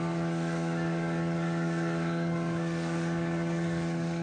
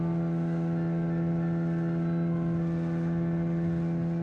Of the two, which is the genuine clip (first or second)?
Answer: second